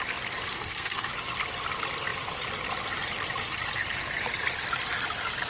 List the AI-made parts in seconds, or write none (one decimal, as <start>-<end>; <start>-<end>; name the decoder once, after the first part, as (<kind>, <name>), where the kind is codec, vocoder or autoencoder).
0.5-1.1 (codec, SNAC)